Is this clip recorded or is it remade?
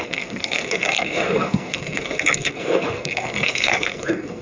remade